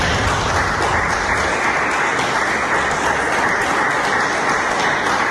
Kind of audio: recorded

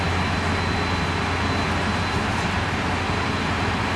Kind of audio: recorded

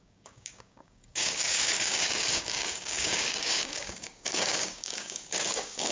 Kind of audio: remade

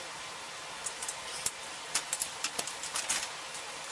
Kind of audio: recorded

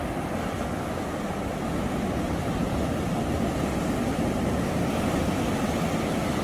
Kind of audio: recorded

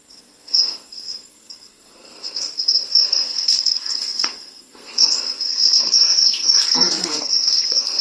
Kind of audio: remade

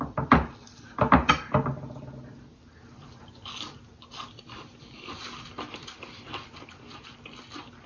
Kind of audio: recorded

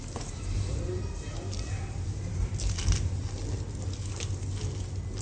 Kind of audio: recorded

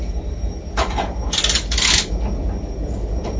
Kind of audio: recorded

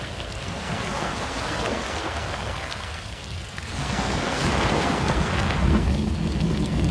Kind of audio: remade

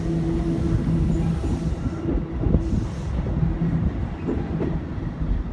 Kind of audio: recorded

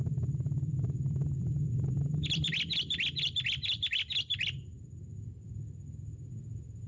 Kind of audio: remade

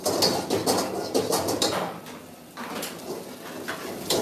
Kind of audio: recorded